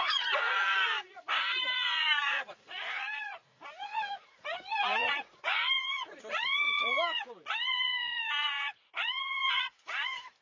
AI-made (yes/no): yes